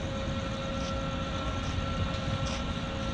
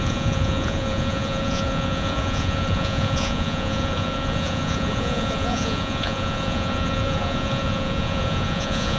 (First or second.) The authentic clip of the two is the first